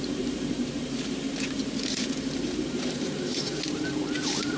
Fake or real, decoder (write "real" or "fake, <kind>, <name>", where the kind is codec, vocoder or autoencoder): fake, vocoder, BigVGAN v2